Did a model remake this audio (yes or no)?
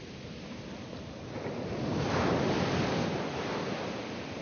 no